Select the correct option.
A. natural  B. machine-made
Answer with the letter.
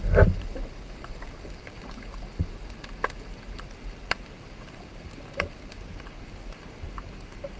A